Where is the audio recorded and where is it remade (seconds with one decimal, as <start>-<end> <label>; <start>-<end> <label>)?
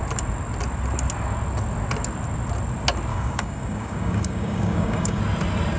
0.0-3.1 recorded; 3.1-5.2 remade; 5.2-5.8 recorded